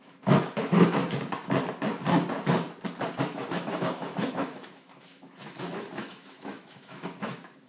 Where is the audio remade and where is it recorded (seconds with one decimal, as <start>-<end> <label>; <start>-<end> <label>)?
0.0-1.0 remade; 1.0-3.2 recorded; 3.2-7.7 remade